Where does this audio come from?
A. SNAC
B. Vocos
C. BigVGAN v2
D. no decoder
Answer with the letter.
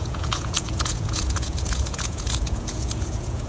B